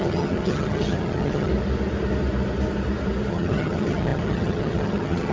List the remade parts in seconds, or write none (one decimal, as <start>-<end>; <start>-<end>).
0.0-1.5; 3.3-5.3